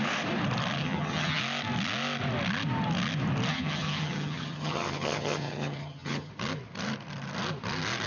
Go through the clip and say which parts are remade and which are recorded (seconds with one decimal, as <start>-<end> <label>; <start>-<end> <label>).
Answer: 0.0-0.8 recorded; 0.8-1.4 remade; 1.4-3.5 recorded; 3.5-6.3 remade; 6.3-8.1 recorded